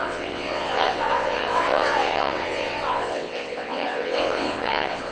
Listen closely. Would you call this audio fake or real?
fake